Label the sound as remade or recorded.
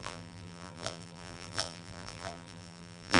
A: remade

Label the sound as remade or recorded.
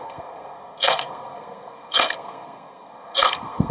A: remade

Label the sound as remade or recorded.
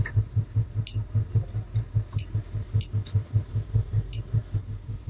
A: remade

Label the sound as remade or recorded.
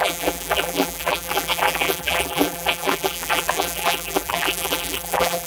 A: remade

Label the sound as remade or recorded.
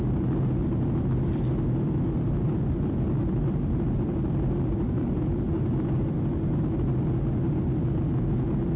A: recorded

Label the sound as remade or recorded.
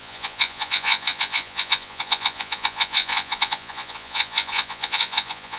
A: remade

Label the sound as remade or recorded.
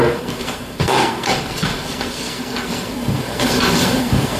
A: remade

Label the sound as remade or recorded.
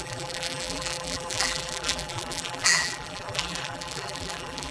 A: remade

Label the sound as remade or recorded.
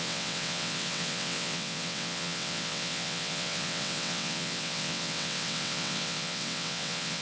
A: remade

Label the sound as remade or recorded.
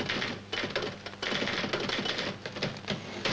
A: recorded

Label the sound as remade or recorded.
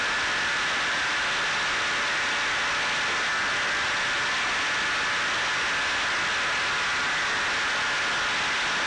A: recorded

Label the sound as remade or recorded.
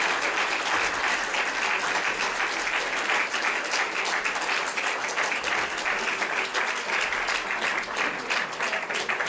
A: recorded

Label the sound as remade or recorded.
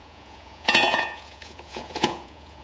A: remade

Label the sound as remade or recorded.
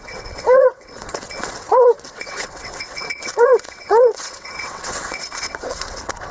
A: remade